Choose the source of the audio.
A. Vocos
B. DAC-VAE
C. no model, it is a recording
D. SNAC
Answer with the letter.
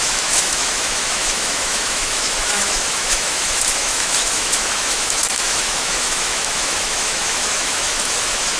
B